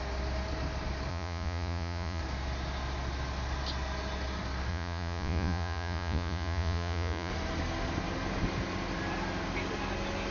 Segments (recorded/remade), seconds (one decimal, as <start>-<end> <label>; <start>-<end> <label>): 0.0-1.1 recorded; 1.1-2.2 remade; 2.2-4.7 recorded; 4.7-7.3 remade; 7.3-10.3 recorded